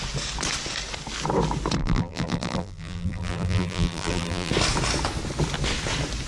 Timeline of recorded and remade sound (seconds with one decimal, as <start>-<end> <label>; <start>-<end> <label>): 0.0-1.8 recorded; 1.8-4.5 remade; 4.5-6.3 recorded